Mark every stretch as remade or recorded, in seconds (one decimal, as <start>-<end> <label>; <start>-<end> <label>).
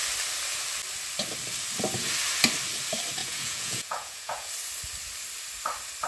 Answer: 0.0-3.2 recorded; 3.2-4.5 remade; 4.5-6.1 recorded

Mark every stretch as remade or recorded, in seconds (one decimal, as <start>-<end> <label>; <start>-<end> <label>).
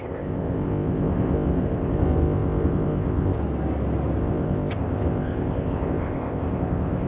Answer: 0.0-3.4 remade; 3.4-4.2 recorded; 4.2-7.1 remade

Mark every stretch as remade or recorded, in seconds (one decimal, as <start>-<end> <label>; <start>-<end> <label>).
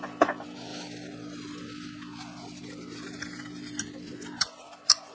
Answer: 0.0-5.1 recorded